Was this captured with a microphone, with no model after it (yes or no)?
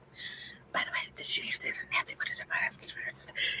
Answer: no